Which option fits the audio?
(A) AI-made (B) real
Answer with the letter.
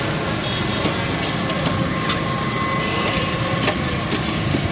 B